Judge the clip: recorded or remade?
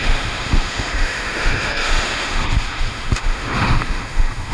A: remade